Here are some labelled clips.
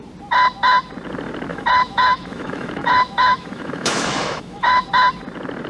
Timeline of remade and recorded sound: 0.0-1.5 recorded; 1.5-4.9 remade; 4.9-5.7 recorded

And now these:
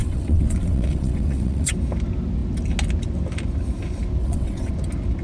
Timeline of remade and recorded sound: 0.0-1.7 remade; 1.7-4.2 recorded; 4.2-4.7 remade; 4.7-5.2 recorded

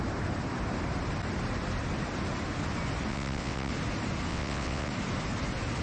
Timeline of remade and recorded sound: 0.0-3.1 recorded; 3.1-3.7 remade; 3.7-4.3 recorded; 4.3-4.9 remade; 4.9-5.8 recorded

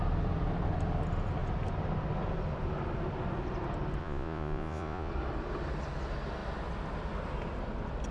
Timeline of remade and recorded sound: 0.0-4.0 recorded; 4.0-5.1 remade; 5.1-8.1 recorded

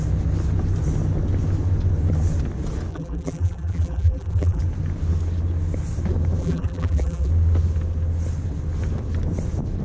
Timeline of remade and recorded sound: 0.0-2.9 recorded; 2.9-4.6 remade; 4.6-6.4 recorded; 6.4-7.3 remade; 7.3-9.8 recorded